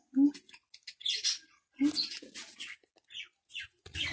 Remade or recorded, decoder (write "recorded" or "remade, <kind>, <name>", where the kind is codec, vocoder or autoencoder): recorded